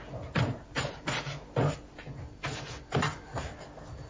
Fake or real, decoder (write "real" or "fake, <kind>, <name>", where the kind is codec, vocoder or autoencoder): real